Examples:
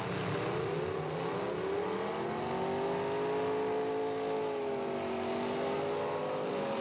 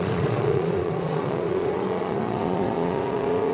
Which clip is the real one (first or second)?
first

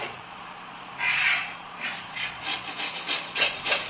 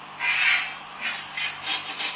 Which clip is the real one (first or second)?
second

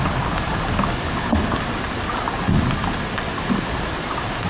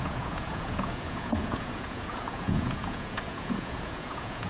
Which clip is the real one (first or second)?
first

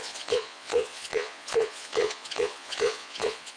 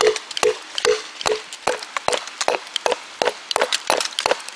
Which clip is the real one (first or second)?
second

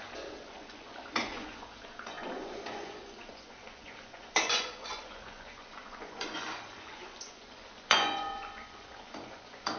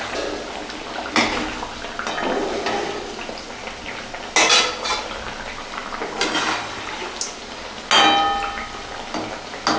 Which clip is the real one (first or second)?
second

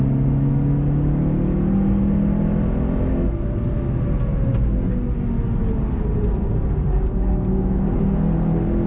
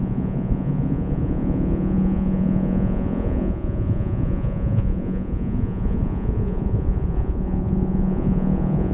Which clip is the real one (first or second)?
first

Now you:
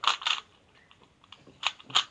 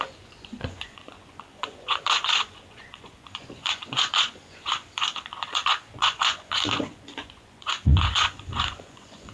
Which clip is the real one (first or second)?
first